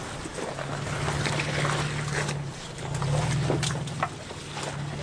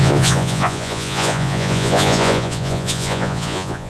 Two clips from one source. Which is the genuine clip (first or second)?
first